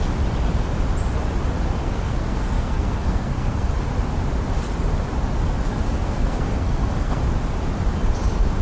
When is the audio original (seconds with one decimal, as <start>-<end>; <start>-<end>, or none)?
0.0-1.8; 3.7-5.7; 7.2-8.6